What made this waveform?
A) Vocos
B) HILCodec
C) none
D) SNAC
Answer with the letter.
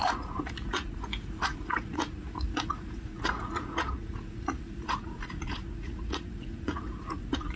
A